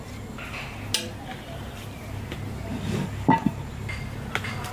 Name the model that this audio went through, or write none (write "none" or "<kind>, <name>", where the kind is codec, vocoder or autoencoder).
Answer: none